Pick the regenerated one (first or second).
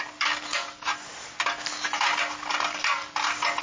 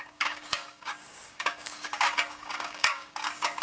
second